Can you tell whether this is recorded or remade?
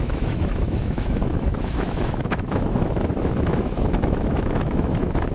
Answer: remade